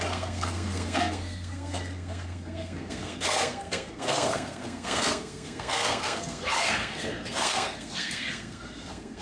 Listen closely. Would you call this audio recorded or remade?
remade